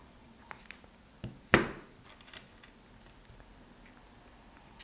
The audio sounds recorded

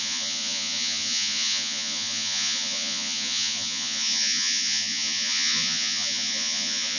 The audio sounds remade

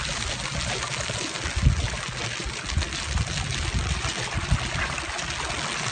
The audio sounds recorded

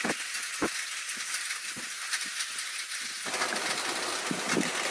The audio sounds recorded